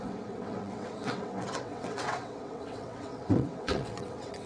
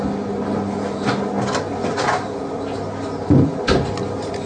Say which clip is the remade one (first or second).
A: first